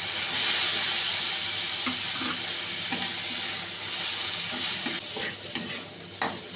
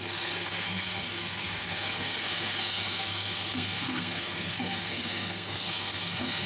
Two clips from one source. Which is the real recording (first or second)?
first